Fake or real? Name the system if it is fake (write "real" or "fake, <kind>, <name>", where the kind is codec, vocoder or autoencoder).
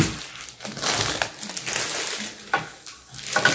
real